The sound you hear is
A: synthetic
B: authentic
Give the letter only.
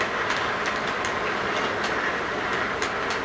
B